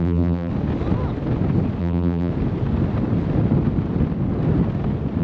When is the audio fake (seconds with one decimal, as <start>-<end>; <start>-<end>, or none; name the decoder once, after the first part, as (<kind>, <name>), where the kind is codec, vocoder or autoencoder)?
0.0-0.5 (vocoder, BigVGAN v2); 1.8-2.3